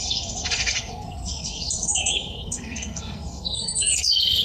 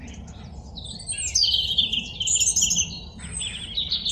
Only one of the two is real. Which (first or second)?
second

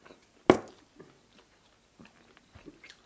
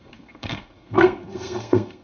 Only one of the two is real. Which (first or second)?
first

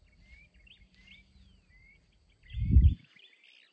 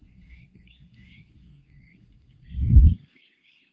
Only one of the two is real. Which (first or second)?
first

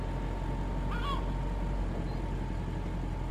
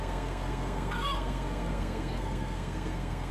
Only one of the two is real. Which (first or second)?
first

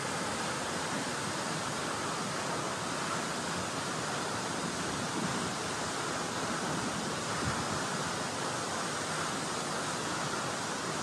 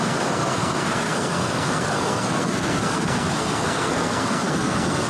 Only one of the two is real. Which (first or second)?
first